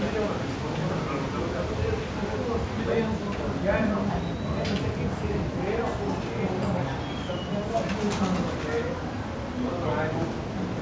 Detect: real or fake real